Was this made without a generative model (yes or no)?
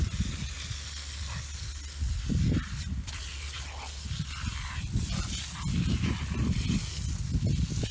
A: yes